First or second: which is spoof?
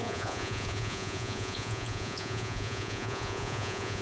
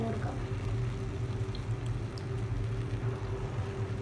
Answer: first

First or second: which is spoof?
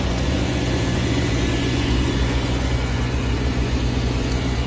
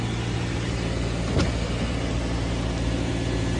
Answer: first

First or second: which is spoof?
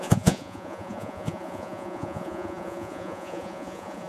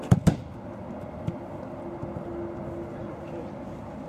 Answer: first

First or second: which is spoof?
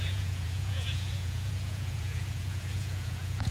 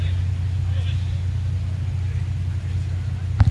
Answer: first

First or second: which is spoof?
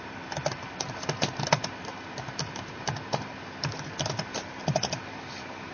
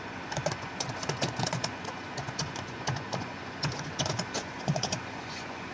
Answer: second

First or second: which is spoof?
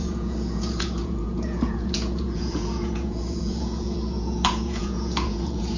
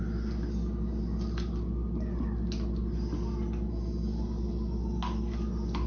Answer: first